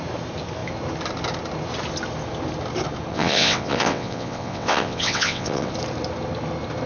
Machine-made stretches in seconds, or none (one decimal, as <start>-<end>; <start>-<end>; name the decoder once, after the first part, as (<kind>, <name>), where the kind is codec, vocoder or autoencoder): 3.1-5.7 (vocoder, WaveNeXt)